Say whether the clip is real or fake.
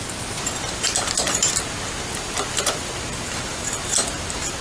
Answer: real